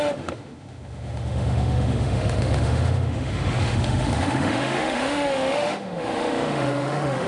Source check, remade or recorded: remade